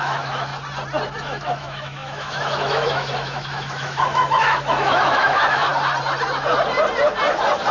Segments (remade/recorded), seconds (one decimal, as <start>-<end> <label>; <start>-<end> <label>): 0.0-0.5 remade; 0.5-1.2 recorded; 1.2-5.7 remade; 5.7-7.7 recorded

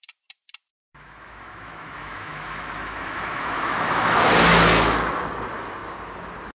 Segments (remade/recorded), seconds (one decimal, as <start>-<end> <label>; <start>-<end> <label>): 0.0-0.7 recorded; 0.7-4.3 remade; 4.3-6.5 recorded